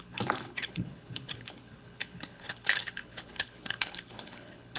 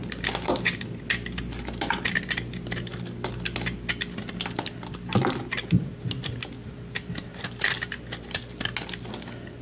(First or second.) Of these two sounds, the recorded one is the second